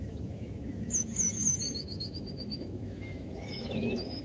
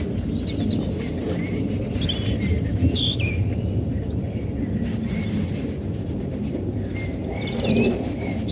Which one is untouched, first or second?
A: second